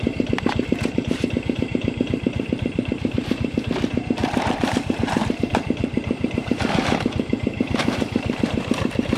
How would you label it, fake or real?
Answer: fake